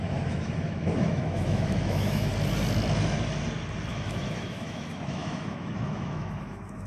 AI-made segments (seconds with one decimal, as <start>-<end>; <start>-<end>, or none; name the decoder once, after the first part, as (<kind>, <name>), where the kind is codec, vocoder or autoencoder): 0.0-2.3 (autoencoder, DAC-VAE); 3.9-6.9